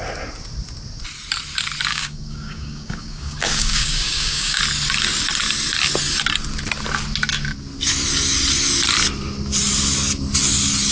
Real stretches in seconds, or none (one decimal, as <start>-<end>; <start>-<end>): 0.0-1.9; 4.6-10.9